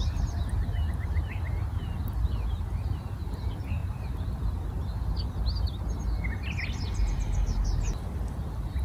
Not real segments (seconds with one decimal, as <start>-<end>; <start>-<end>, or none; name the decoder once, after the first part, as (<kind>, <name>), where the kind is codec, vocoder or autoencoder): none